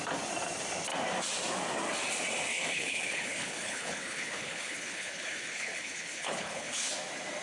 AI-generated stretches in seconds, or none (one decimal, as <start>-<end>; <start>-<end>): 2.5-6.9